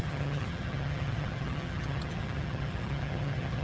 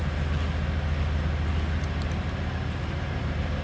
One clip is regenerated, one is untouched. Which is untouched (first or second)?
second